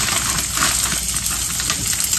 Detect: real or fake real